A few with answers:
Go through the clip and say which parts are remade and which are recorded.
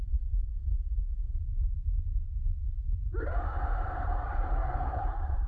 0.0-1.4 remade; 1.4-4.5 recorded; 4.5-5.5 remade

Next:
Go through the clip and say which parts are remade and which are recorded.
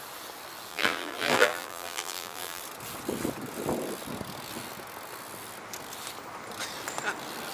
0.0-0.7 recorded; 0.7-2.6 remade; 2.6-7.5 recorded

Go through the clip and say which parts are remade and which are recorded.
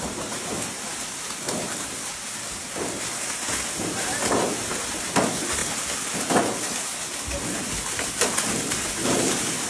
0.0-9.7 recorded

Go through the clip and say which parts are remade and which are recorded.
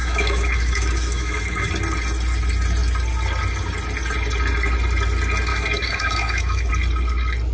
0.0-1.7 remade; 1.7-5.5 recorded; 5.5-6.7 remade; 6.7-7.5 recorded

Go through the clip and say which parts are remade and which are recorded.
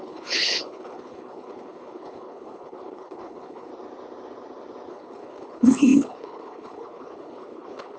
0.0-3.7 remade; 3.7-4.9 recorded; 4.9-8.0 remade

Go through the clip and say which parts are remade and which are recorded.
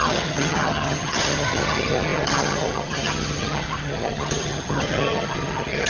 0.0-5.9 remade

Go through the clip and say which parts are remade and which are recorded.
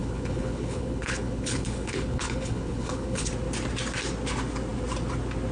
0.0-3.3 remade; 3.3-5.5 recorded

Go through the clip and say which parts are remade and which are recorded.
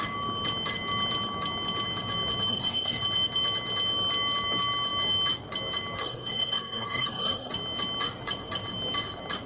0.0-2.5 recorded; 2.5-3.0 remade; 3.0-6.0 recorded; 6.0-7.5 remade; 7.5-9.5 recorded